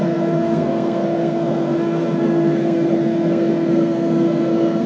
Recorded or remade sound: remade